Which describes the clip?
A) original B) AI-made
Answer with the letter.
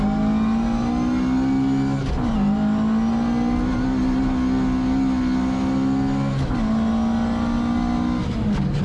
A